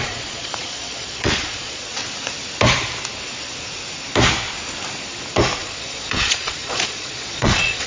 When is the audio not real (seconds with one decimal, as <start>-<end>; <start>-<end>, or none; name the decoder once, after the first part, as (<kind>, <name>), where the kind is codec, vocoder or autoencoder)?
0.0-2.0 (vocoder, Vocos); 5.6-7.9